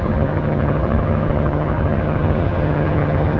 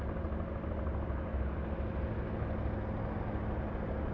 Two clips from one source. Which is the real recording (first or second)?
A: second